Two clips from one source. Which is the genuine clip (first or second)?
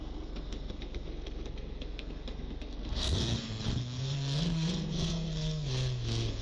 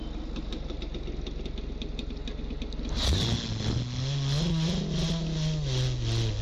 second